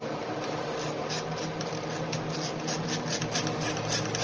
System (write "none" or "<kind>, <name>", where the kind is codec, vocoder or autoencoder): none